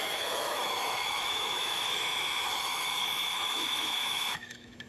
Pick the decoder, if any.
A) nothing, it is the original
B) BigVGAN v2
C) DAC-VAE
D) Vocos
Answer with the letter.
C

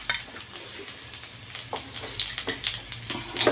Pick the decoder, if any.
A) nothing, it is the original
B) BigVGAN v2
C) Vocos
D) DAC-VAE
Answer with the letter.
A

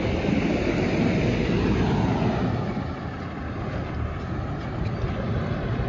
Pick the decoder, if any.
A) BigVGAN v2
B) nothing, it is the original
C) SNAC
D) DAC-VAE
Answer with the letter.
B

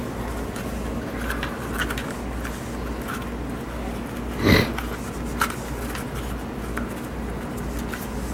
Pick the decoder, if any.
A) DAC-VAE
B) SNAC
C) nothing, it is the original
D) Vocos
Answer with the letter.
C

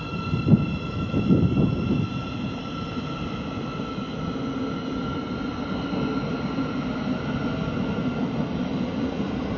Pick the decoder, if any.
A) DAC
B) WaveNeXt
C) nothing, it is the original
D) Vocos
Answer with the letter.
C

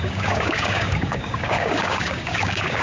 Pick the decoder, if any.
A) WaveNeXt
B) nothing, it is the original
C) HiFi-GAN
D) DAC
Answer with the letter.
D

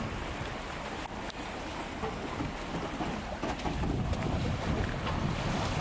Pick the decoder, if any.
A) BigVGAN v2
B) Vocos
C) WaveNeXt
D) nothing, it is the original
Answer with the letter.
D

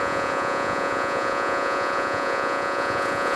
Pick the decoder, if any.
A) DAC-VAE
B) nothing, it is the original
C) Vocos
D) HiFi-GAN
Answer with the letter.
C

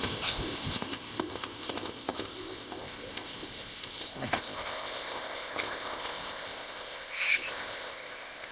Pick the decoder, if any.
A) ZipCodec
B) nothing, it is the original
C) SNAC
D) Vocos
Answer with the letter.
A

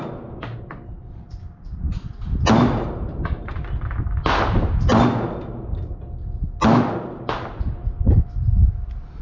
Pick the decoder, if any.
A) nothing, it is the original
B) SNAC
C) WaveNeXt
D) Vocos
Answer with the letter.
A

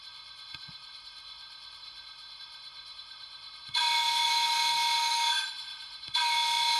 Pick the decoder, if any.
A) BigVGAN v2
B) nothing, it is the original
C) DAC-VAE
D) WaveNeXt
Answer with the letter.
C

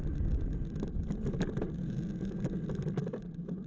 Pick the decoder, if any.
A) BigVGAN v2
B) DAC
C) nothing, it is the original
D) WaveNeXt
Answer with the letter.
C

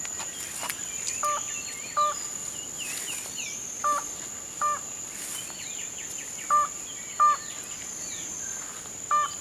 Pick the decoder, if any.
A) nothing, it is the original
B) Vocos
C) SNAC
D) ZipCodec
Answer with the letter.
A